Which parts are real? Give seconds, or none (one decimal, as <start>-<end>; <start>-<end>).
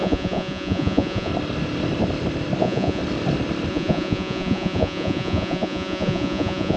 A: 1.3-2.6; 3.0-3.7